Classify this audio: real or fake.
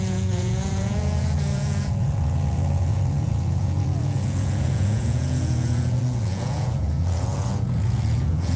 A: fake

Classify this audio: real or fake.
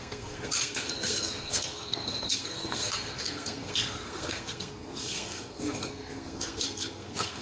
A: fake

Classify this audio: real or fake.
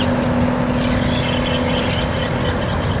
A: real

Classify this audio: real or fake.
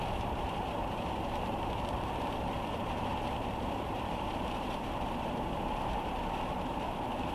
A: fake